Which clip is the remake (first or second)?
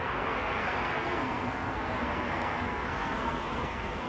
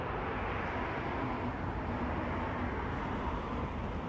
first